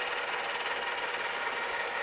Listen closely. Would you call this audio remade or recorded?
recorded